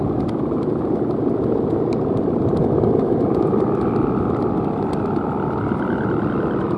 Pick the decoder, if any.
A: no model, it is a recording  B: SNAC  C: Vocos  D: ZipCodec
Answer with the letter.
A